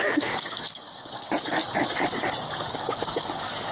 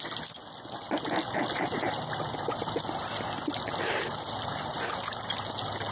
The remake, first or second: first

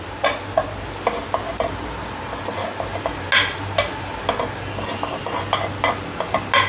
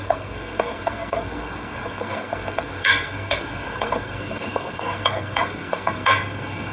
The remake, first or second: second